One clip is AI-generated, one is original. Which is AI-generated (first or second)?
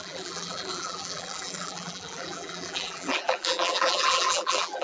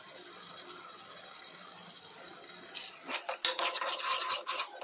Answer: first